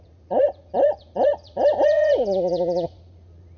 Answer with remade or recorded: remade